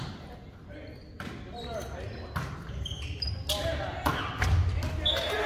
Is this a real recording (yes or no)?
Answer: yes